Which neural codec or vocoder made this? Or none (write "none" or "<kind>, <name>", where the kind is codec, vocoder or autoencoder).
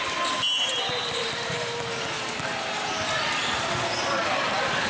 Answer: none